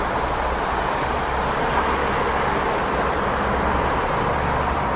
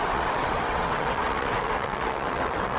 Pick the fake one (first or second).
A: second